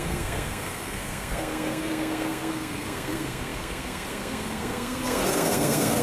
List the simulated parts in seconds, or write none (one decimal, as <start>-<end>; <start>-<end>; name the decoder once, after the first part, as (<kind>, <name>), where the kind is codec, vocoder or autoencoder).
0.0-6.0 (codec, SNAC)